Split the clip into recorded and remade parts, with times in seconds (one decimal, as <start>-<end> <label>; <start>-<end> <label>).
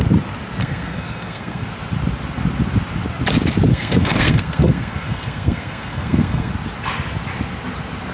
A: 0.0-0.6 recorded; 0.6-1.7 remade; 1.7-3.7 recorded; 3.7-6.5 remade; 6.5-8.1 recorded